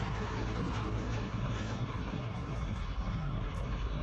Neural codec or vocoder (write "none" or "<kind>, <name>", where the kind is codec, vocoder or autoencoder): codec, SNAC